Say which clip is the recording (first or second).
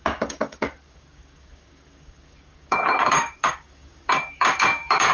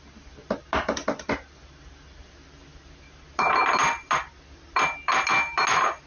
second